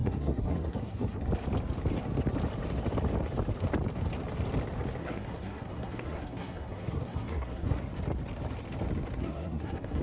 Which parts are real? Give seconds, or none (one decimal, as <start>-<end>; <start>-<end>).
1.3-5.0; 7.8-9.2